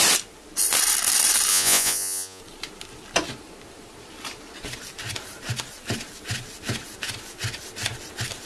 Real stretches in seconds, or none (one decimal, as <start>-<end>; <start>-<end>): 0.0-1.5; 2.4-8.5